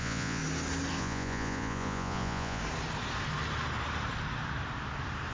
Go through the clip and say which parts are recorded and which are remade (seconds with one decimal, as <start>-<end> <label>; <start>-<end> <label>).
0.0-0.4 remade; 0.4-1.0 recorded; 1.0-2.6 remade; 2.6-5.3 recorded